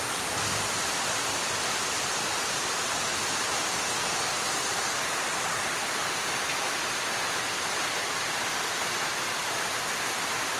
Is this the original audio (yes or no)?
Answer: yes